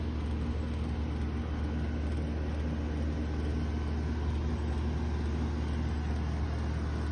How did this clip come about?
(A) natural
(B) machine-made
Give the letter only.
A